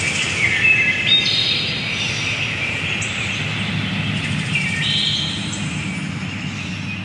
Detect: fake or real real